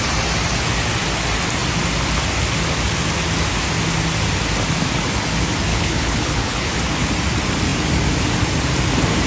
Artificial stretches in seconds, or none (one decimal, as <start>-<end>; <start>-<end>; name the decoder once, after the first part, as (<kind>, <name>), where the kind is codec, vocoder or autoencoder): 5.7-6.8 (codec, HILCodec)